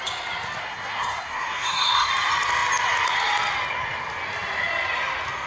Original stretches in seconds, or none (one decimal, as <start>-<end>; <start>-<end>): 0.0-0.6; 2.1-5.5